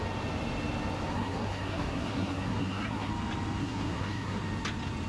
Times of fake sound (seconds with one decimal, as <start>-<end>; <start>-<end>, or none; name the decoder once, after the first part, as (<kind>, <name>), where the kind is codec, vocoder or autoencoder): 1.1-3.1 (codec, SNAC); 3.6-4.4